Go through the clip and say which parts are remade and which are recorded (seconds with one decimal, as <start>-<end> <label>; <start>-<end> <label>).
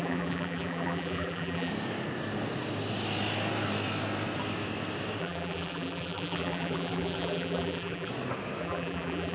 0.0-1.7 remade; 1.7-5.2 recorded; 5.2-8.1 remade; 8.1-8.6 recorded; 8.6-9.3 remade